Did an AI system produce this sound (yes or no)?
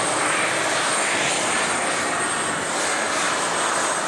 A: no